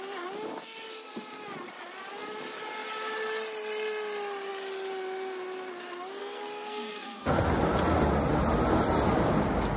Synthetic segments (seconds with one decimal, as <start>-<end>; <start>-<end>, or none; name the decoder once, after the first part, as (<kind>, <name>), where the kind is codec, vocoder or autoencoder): 6.2-7.4 (codec, SNAC)